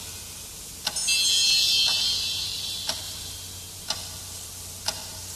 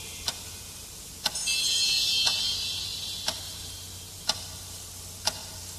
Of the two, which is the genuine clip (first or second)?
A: first